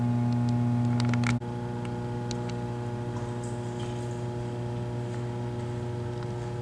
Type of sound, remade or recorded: recorded